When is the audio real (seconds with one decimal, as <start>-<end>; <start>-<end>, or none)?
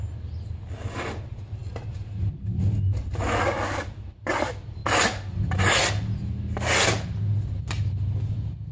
0.0-8.7